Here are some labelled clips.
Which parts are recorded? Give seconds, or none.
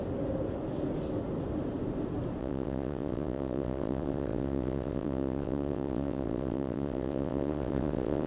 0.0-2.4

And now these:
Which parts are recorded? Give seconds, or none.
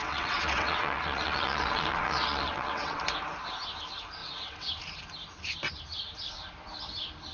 3.0-4.2; 4.7-7.3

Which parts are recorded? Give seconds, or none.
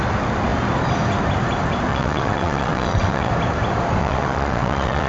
0.0-1.9; 3.3-4.0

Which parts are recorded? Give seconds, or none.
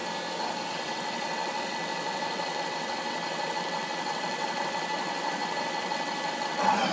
0.0-0.7